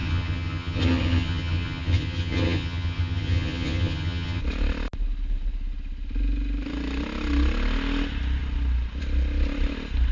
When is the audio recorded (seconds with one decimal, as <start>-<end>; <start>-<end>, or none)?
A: 4.4-10.1